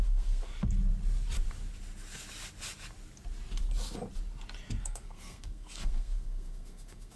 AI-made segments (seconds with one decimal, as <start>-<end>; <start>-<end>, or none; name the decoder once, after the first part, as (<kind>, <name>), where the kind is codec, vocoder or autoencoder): 0.0-0.5 (codec, SNAC); 4.8-7.2